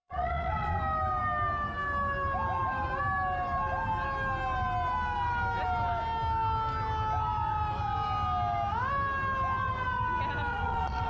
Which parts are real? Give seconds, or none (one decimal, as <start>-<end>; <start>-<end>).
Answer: 0.8-10.5